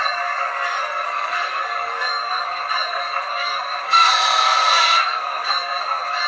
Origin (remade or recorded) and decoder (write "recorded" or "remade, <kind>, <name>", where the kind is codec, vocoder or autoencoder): remade, codec, SNAC